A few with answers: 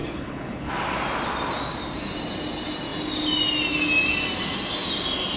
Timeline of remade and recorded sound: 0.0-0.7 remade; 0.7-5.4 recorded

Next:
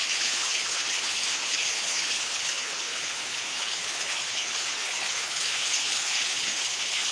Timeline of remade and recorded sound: 0.0-7.1 remade

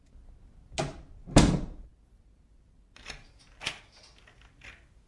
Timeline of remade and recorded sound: 0.0-5.1 recorded

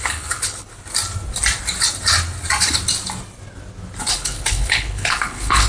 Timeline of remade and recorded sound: 0.0-0.7 remade; 0.7-4.1 recorded; 4.1-5.7 remade